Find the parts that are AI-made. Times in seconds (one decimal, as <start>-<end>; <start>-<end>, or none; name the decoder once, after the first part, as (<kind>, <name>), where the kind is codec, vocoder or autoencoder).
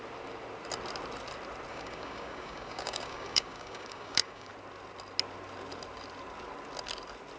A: 1.7-4.5 (codec, DAC)